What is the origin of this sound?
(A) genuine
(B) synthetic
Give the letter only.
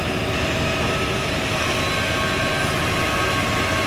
A